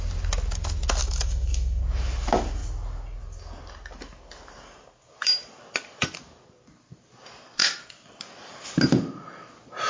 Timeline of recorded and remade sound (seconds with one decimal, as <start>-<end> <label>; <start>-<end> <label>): 0.0-1.0 recorded; 1.0-1.8 remade; 1.8-9.9 recorded